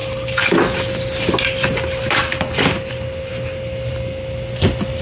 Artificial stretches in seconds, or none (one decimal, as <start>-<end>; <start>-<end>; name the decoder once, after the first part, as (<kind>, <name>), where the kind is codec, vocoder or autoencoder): none